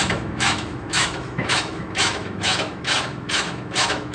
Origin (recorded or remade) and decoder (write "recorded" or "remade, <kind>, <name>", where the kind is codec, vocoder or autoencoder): remade, autoencoder, DAC-VAE